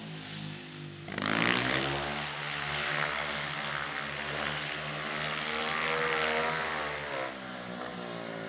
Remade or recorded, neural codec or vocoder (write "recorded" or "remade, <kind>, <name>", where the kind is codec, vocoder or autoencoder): recorded